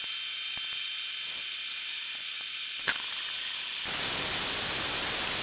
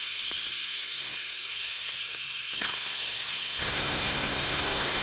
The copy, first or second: second